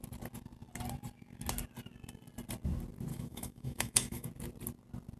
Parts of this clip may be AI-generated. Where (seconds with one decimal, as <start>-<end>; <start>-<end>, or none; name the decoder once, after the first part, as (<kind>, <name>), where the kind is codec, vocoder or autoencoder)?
3.1-4.3 (autoencoder, DAC-VAE)